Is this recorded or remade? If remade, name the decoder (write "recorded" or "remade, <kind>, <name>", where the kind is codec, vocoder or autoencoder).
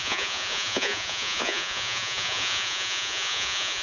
remade, vocoder, Vocos